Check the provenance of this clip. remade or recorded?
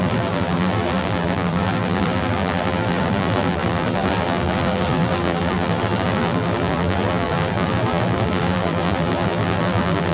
remade